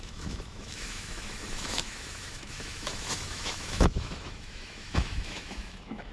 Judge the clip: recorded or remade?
remade